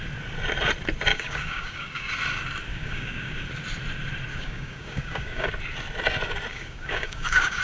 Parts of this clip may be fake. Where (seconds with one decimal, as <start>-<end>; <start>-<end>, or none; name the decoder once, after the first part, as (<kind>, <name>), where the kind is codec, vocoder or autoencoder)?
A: 1.1-2.1 (codec, DAC); 2.7-3.3; 4.3-5.5; 6.5-7.6